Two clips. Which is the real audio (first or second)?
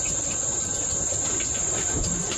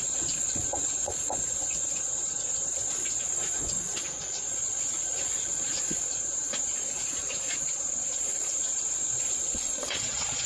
first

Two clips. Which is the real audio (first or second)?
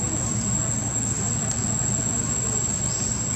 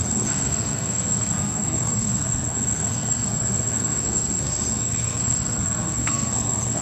first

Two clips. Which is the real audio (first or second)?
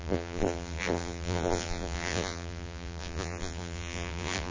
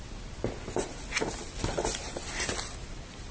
second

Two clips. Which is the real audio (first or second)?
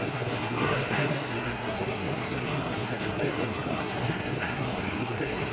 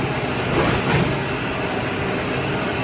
second